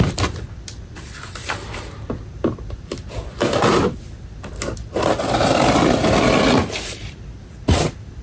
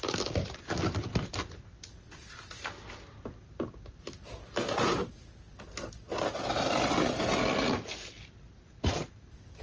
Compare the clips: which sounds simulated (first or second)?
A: first